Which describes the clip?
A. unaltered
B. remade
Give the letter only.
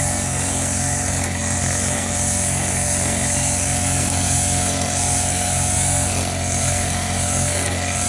B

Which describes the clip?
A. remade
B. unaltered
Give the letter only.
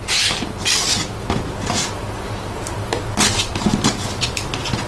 B